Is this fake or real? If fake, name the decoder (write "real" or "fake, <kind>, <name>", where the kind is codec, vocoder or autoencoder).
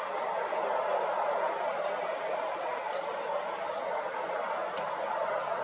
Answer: real